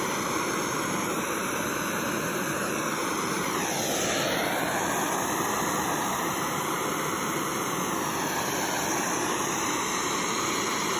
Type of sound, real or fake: fake